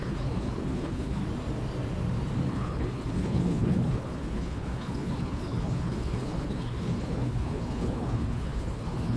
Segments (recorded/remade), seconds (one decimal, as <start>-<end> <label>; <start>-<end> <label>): 0.0-1.2 remade; 1.2-2.5 recorded; 2.5-9.2 remade